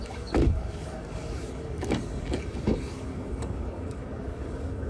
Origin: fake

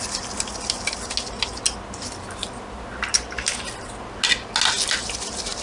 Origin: real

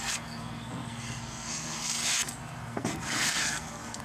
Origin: fake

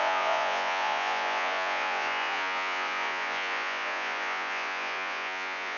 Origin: fake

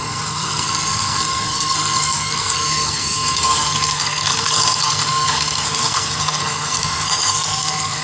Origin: fake